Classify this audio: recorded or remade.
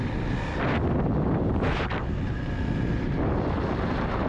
recorded